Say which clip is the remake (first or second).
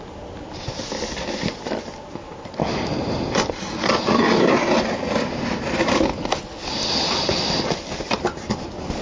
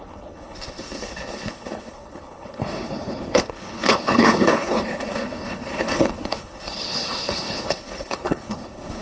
second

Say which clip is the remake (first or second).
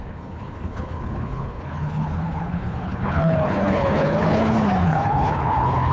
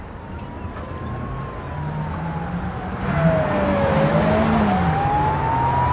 first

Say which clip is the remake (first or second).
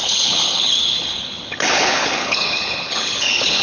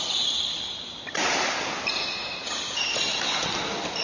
first